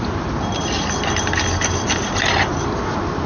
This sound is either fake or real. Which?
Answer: real